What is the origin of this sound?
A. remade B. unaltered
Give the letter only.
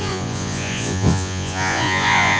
A